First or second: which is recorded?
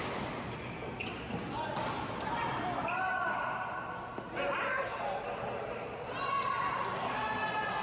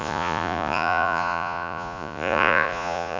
first